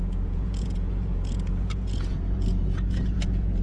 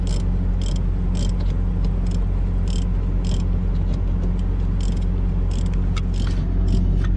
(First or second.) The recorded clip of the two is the second